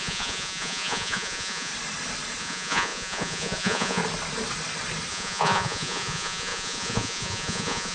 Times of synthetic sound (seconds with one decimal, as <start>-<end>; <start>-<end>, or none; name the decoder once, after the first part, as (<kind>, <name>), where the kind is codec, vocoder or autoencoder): 0.0-1.7 (vocoder, Vocos); 2.4-4.0; 5.1-7.9